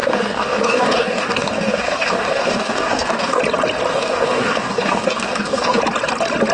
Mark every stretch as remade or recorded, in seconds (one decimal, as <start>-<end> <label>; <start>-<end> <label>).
0.0-3.4 remade; 3.4-3.9 recorded; 3.9-5.8 remade; 5.8-6.5 recorded